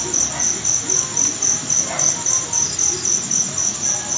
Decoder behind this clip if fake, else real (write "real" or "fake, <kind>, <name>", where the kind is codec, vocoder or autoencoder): real